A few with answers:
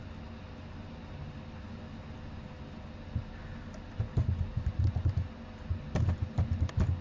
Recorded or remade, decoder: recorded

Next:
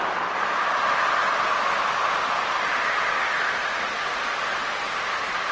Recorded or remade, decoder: recorded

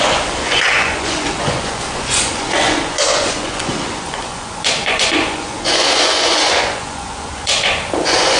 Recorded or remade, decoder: remade, vocoder, Vocos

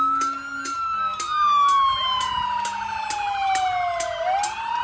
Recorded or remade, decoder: recorded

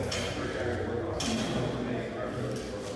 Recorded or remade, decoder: recorded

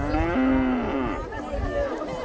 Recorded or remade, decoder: recorded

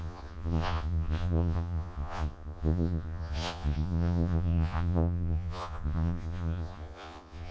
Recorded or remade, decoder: remade, vocoder, Vocos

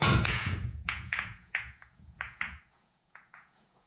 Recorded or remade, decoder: remade, vocoder, Vocos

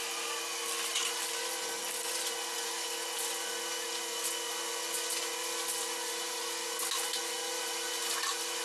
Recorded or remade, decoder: recorded